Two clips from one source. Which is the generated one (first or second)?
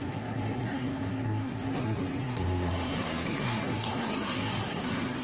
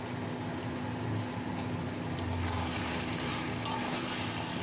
first